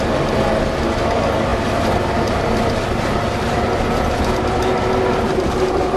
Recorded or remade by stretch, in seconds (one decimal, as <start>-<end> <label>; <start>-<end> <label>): 0.0-6.0 recorded

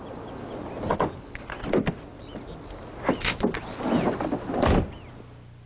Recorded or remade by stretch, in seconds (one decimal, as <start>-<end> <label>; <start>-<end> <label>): 0.0-5.7 recorded

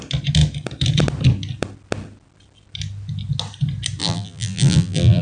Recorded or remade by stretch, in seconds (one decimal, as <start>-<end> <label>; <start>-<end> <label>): 0.0-4.0 recorded; 4.0-5.2 remade

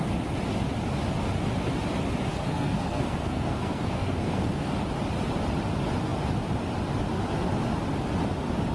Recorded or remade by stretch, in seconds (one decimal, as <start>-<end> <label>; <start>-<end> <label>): 0.0-2.3 recorded; 2.3-4.7 remade; 4.7-8.7 recorded

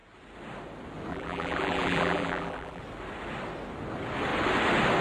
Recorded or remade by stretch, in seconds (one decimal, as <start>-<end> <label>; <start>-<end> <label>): 0.0-1.1 recorded; 1.1-2.8 remade; 2.8-5.0 recorded